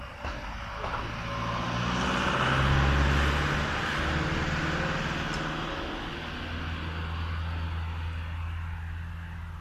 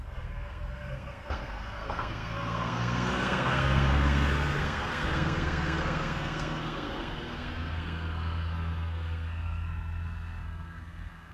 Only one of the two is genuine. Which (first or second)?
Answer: first